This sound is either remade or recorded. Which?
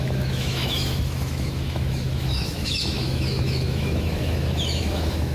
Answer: remade